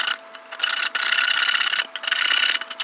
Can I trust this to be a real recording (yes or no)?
yes